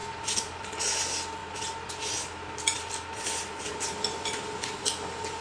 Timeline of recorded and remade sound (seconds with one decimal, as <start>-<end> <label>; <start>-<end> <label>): 0.0-5.4 recorded